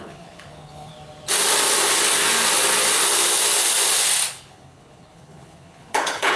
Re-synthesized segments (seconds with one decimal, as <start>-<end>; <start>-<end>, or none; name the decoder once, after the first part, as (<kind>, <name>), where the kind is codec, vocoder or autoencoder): 0.0-0.9 (codec, HILCodec); 4.3-6.4